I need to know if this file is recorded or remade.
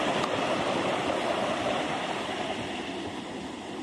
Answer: recorded